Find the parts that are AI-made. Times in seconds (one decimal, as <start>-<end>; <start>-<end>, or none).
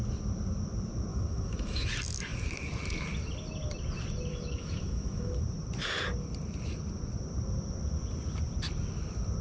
1.1-1.9; 4.3-5.4